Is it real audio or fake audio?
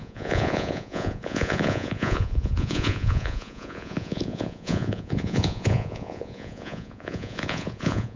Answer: fake